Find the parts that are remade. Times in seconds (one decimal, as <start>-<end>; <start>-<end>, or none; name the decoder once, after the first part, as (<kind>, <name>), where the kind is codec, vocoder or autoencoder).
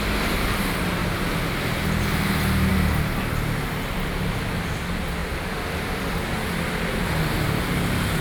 5.2-6.5 (vocoder, BigVGAN v2)